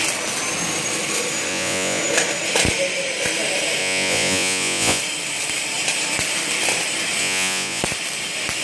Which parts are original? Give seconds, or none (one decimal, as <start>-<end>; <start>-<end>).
0.0-1.5; 2.0-3.8; 5.0-7.2; 7.8-8.6